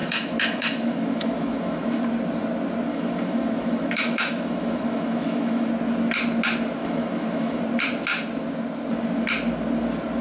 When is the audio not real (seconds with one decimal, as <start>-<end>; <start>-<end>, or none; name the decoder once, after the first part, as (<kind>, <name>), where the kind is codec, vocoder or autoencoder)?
0.0-2.0 (autoencoder, DAC-VAE); 2.9-5.7; 6.8-7.6